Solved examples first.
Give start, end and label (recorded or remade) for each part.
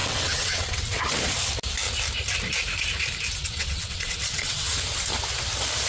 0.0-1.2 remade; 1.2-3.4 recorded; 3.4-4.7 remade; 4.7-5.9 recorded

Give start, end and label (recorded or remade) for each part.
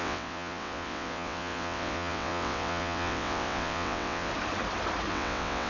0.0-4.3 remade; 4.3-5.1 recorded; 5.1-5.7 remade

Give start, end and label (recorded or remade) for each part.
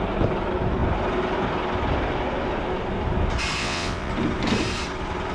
0.0-3.6 recorded; 3.6-4.1 remade; 4.1-5.3 recorded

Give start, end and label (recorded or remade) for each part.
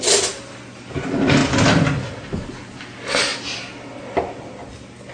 0.0-5.1 recorded